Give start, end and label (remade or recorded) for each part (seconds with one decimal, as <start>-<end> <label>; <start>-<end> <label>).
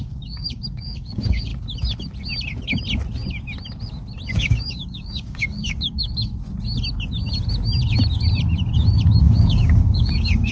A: 0.0-1.5 remade; 1.5-4.3 recorded; 4.3-6.3 remade; 6.3-9.2 recorded; 9.2-10.5 remade